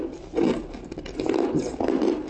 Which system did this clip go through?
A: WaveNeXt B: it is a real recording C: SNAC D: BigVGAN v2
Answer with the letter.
B